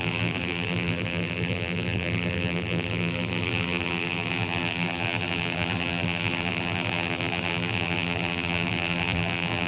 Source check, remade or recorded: remade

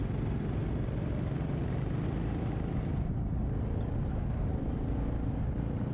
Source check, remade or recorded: recorded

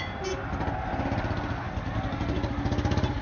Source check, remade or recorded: recorded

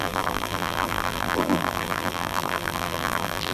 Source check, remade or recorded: remade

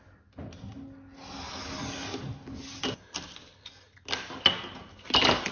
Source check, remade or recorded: recorded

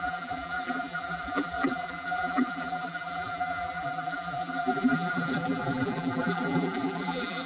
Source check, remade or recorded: remade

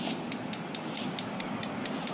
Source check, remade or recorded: recorded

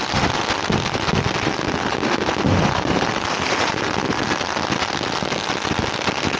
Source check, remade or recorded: recorded